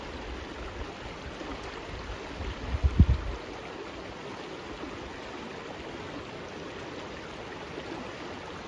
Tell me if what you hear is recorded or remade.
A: recorded